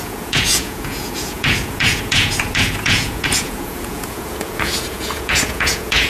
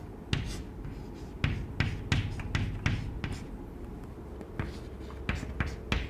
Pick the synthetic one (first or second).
first